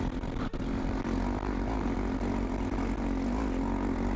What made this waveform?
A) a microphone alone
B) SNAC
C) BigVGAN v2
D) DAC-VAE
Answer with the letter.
A